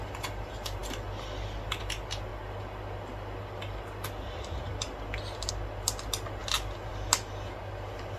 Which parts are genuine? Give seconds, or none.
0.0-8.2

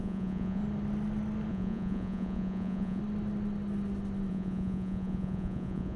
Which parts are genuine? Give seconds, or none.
0.6-1.5; 3.0-4.3

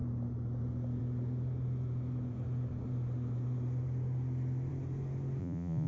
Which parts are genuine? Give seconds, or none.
0.0-5.4

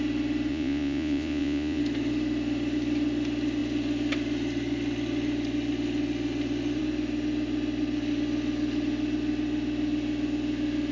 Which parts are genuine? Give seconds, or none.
0.0-0.5; 1.8-10.9

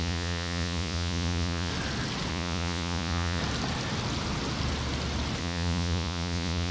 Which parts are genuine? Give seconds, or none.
1.7-2.3; 3.4-5.4

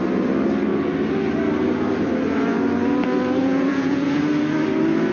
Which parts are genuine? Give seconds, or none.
0.0-3.4; 4.2-5.1

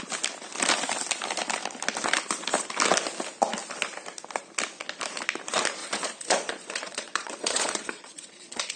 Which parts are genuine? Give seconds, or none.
0.0-5.8

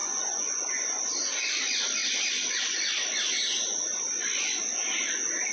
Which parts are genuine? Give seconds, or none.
1.0-5.5